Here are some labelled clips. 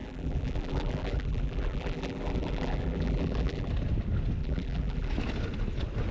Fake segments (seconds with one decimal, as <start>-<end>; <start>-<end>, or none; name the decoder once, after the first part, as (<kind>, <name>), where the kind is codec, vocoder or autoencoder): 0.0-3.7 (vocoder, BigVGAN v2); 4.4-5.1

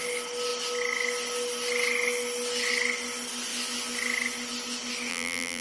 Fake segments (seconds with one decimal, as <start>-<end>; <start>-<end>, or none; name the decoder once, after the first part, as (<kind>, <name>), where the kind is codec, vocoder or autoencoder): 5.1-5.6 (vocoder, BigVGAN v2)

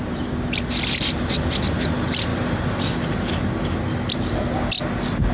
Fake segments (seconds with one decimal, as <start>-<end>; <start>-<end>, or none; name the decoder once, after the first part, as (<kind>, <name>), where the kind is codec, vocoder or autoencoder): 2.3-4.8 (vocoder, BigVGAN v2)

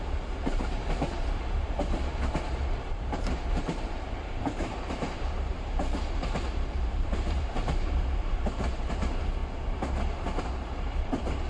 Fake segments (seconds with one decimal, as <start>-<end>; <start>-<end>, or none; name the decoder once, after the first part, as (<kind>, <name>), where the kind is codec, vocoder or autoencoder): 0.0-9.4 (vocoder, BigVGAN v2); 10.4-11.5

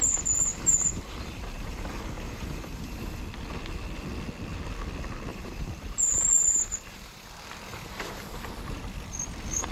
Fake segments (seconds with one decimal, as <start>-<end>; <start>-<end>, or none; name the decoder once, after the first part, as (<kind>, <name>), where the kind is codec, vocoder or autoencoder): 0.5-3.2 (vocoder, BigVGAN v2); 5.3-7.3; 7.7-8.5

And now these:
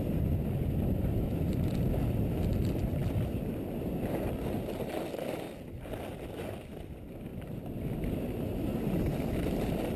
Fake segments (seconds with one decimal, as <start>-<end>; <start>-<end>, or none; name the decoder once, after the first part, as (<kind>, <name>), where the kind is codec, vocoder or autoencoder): none

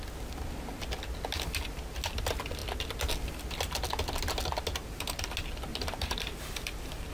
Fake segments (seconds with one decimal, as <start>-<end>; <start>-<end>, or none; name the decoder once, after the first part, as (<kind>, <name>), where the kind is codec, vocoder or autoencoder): 5.7-7.1 (vocoder, BigVGAN v2)

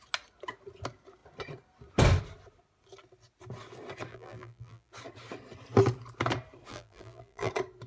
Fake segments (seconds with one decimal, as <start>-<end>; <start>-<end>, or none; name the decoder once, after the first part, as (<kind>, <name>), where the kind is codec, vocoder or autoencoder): 4.1-4.9 (vocoder, BigVGAN v2); 6.7-7.5